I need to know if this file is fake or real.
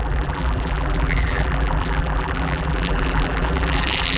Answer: fake